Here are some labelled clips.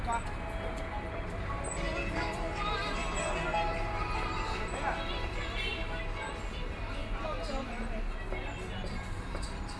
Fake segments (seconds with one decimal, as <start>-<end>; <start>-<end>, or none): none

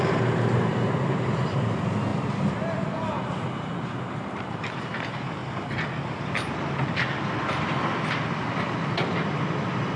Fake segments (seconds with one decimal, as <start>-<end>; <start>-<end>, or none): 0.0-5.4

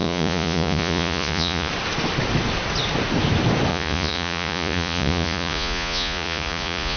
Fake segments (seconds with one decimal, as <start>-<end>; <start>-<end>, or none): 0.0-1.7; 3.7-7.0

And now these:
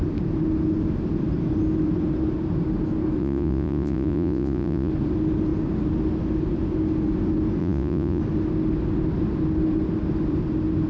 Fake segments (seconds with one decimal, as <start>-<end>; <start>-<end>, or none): 3.2-4.9; 7.6-8.2

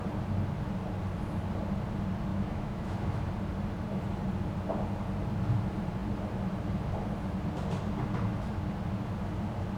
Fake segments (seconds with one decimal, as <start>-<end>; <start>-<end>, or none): 2.3-3.3